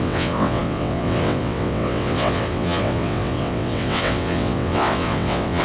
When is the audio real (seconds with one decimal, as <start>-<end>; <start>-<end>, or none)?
none